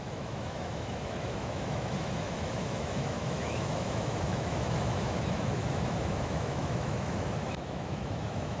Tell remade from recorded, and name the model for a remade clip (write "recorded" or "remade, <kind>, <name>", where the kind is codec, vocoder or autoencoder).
remade, autoencoder, DAC-VAE